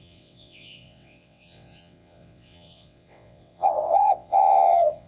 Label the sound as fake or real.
fake